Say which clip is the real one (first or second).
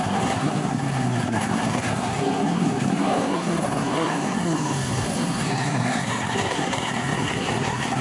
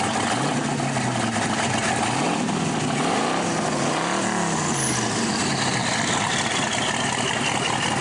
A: second